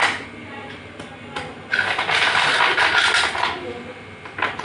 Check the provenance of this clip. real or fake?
real